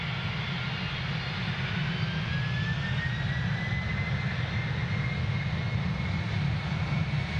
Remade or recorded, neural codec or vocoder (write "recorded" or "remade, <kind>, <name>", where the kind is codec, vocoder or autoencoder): recorded